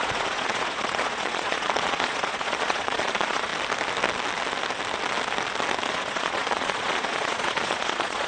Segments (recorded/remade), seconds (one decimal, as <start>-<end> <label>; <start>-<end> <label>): 0.0-3.5 remade; 3.5-5.9 recorded; 5.9-8.3 remade